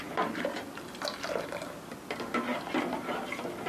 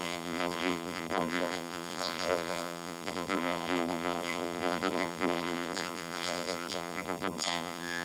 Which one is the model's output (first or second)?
second